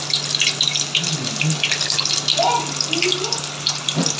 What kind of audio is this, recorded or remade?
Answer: recorded